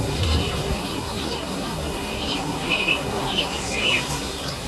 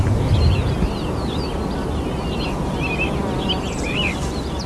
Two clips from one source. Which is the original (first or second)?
second